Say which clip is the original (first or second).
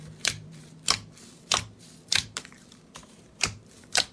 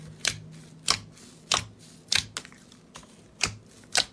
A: second